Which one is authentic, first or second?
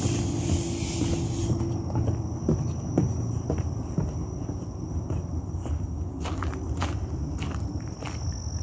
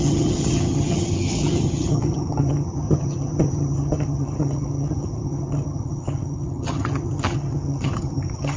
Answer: first